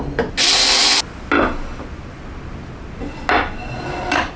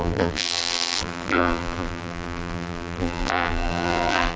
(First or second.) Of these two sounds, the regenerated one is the second